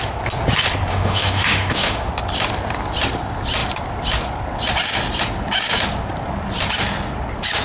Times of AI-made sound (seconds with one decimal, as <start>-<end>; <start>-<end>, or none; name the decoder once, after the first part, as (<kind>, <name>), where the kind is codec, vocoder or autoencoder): 0.9-2.1 (autoencoder, DAC-VAE)